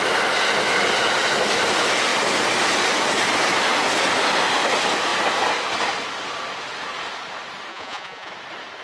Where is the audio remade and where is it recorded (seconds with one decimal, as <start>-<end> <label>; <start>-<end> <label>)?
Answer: 0.0-7.7 recorded; 7.7-8.3 remade; 8.3-8.8 recorded